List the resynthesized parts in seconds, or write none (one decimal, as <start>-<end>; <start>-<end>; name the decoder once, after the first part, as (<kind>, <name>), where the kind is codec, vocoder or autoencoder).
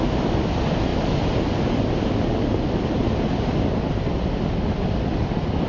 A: none